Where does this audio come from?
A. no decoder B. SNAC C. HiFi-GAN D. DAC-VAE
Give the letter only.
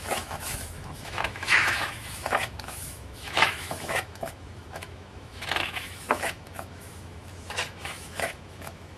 D